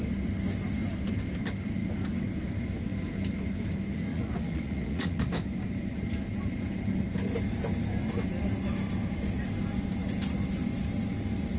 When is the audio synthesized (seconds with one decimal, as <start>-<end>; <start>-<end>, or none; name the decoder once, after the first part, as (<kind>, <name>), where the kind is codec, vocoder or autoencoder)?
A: 4.1-5.3 (vocoder, Vocos)

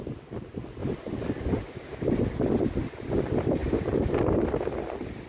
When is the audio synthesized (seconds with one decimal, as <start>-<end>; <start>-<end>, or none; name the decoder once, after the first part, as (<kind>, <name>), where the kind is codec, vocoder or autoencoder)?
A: none

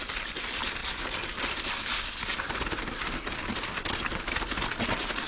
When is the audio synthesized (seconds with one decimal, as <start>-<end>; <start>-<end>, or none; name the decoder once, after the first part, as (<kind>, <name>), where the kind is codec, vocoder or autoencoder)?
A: none

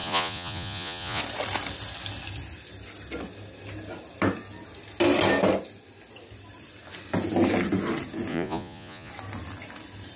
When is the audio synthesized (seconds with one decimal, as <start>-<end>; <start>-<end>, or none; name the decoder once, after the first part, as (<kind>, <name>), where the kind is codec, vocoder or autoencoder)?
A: 0.0-1.2 (vocoder, Vocos); 8.3-9.1